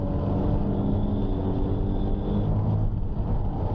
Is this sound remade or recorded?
recorded